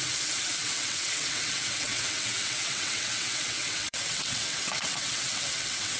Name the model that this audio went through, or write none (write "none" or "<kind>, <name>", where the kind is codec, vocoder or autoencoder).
vocoder, WaveNeXt